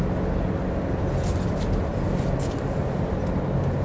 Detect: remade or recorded recorded